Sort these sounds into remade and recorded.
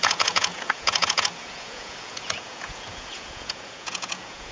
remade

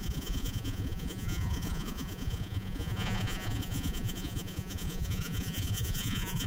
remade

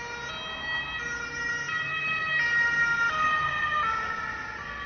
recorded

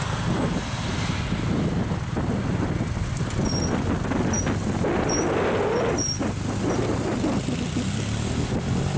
recorded